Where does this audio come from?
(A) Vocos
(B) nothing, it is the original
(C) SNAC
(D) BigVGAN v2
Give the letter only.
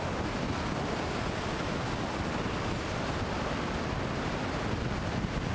B